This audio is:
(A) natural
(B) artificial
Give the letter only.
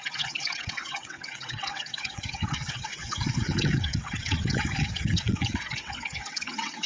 B